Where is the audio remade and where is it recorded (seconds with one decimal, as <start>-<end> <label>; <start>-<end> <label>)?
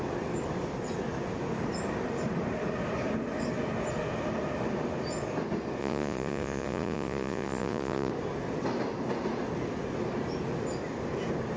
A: 0.0-5.8 recorded; 5.8-8.1 remade; 8.1-11.6 recorded